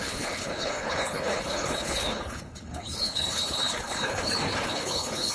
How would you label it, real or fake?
fake